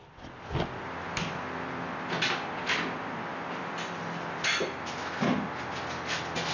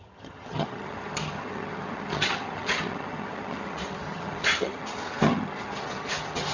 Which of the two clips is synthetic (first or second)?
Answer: second